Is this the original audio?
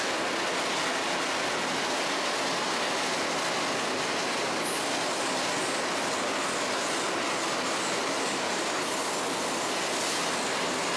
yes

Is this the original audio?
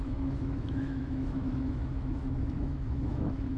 no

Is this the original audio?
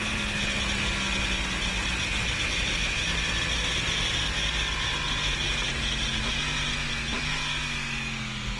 yes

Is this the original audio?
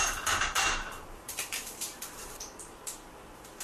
no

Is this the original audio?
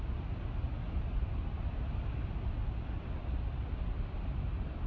yes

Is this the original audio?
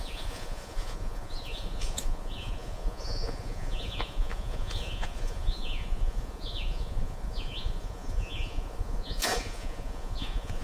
no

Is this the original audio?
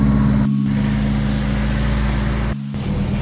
yes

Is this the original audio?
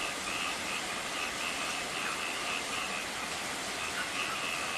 yes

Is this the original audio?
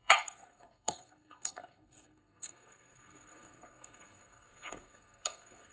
no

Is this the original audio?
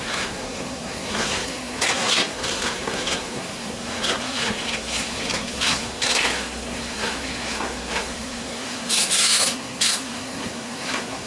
no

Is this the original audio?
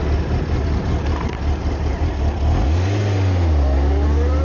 yes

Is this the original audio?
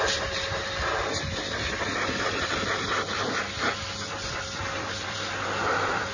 no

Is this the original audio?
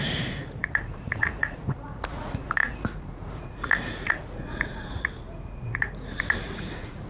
no